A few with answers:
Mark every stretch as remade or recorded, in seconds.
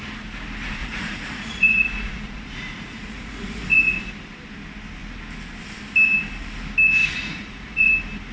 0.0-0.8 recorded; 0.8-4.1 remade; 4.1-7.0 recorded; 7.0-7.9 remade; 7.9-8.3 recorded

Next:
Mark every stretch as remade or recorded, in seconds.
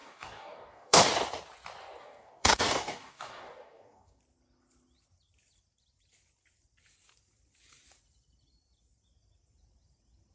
0.0-1.0 remade; 1.0-2.0 recorded; 2.0-4.2 remade; 4.2-10.3 recorded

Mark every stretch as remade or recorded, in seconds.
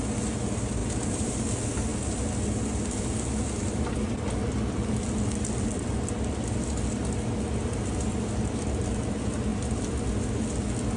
0.0-0.8 recorded; 0.8-1.3 remade; 1.3-11.0 recorded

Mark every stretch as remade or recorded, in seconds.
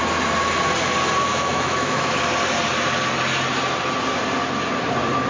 0.0-1.3 recorded; 1.3-2.2 remade; 2.2-5.3 recorded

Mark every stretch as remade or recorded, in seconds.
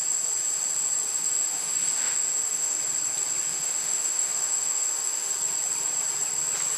0.0-1.1 recorded; 1.1-2.8 remade; 2.8-3.5 recorded; 3.5-5.3 remade; 5.3-6.8 recorded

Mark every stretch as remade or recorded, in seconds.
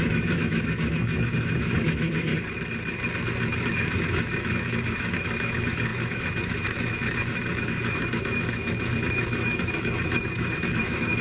0.0-2.3 remade; 2.3-3.5 recorded; 3.5-11.2 remade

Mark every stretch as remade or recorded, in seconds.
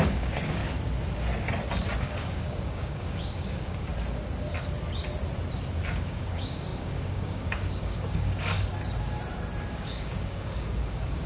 0.0-0.6 remade; 0.6-2.0 recorded; 2.0-3.9 remade; 3.9-5.8 recorded; 5.8-8.7 remade; 8.7-9.7 recorded; 9.7-11.3 remade